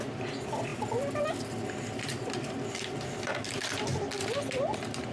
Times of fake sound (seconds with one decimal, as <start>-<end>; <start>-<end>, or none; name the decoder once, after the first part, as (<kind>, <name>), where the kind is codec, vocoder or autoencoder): none